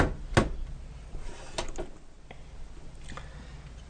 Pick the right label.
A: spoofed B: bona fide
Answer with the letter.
B